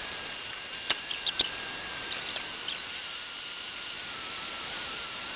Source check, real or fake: real